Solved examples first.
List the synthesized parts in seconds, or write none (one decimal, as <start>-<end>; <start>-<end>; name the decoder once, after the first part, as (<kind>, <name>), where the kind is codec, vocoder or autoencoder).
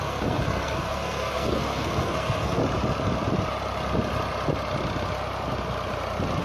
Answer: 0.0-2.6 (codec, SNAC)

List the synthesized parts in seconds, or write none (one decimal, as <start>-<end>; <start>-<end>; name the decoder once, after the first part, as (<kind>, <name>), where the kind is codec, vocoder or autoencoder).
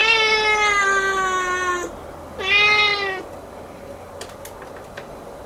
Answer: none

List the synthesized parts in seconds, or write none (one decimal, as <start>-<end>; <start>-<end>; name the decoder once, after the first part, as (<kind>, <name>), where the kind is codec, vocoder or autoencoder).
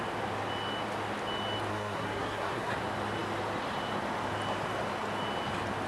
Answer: 1.7-2.7 (codec, SNAC)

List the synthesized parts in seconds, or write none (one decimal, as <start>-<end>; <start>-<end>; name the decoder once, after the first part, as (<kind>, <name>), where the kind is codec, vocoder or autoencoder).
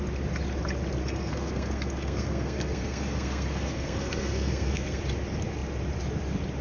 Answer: 1.0-5.0 (codec, SNAC)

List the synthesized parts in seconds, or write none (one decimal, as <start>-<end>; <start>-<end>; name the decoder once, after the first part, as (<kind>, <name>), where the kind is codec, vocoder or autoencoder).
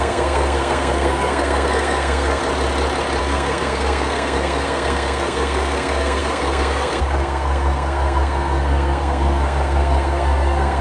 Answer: 0.0-2.4 (codec, SNAC); 3.2-10.8